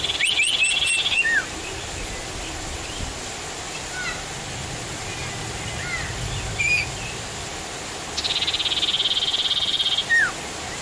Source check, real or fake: real